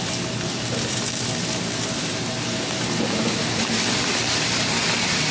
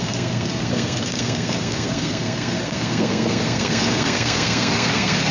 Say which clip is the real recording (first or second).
first